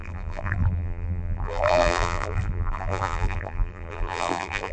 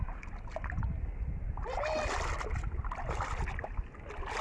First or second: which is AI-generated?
first